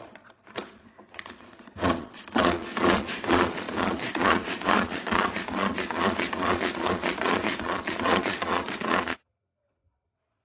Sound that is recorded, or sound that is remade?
remade